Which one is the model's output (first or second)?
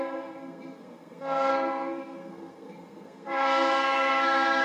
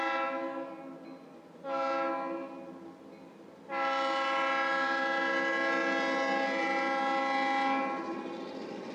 first